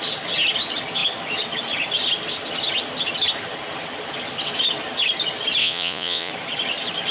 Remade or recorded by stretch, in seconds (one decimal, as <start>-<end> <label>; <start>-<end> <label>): 0.0-5.6 recorded; 5.6-6.3 remade; 6.3-7.1 recorded